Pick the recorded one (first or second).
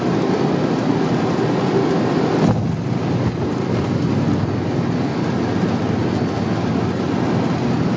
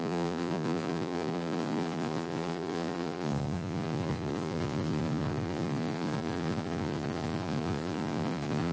first